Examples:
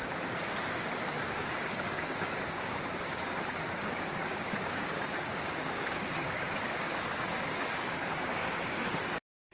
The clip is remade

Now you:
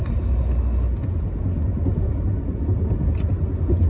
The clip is recorded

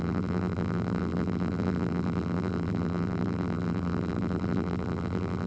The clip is remade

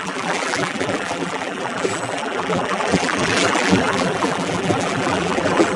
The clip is remade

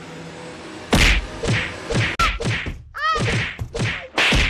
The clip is recorded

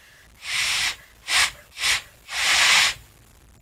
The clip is recorded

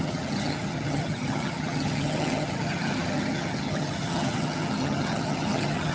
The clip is remade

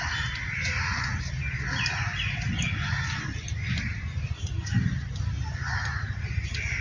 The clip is recorded